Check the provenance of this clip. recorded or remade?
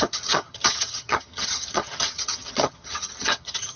remade